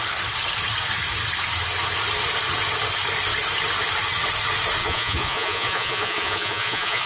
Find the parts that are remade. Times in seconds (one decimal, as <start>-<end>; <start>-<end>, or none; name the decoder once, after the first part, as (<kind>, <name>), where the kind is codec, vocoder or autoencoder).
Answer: 4.8-7.1 (vocoder, Vocos)